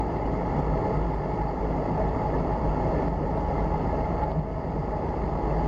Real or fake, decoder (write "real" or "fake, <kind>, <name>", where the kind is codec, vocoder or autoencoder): fake, vocoder, BigVGAN v2